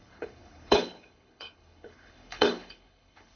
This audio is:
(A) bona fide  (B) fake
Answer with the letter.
B